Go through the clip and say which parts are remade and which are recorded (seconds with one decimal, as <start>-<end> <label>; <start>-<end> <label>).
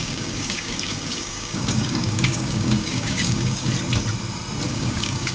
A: 0.0-3.7 remade; 3.7-4.7 recorded; 4.7-5.3 remade